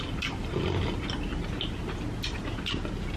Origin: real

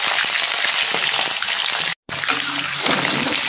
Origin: real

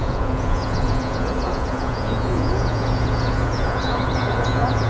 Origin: fake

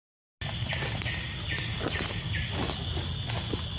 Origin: real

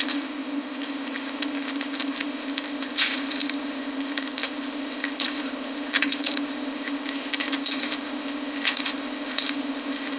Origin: fake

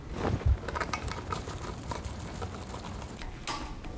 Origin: real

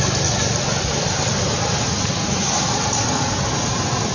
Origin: real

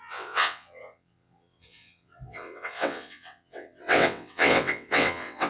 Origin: fake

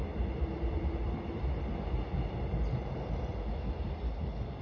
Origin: real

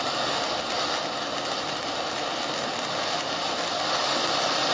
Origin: real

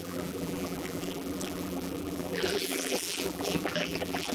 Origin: fake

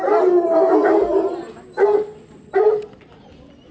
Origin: real